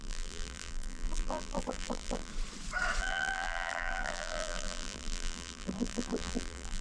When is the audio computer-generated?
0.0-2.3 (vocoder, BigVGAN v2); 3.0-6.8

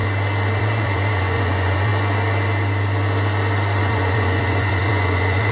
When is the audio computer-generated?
0.6-1.9 (vocoder, Vocos); 3.8-5.5